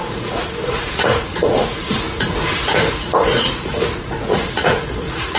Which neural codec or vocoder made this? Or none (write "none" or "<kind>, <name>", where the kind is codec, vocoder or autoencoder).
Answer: vocoder, Vocos